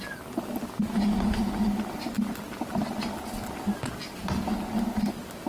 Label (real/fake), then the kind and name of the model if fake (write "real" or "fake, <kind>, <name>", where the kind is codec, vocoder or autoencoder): real